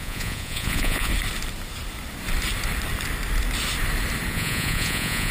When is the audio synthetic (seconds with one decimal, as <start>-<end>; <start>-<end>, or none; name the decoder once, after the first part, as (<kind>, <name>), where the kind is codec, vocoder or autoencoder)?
0.0-1.1 (vocoder, Vocos); 4.3-5.3